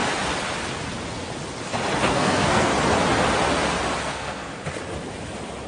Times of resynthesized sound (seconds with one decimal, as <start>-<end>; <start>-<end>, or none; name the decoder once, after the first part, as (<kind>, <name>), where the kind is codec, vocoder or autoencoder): 2.1-2.7 (codec, SNAC); 4.0-4.5